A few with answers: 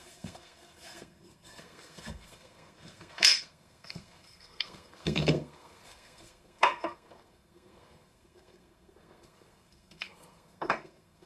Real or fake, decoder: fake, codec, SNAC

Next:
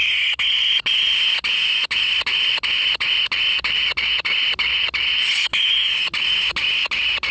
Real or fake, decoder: real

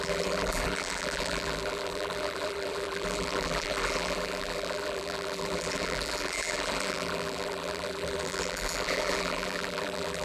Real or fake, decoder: fake, vocoder, BigVGAN v2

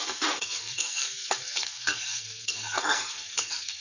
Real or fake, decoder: fake, codec, SNAC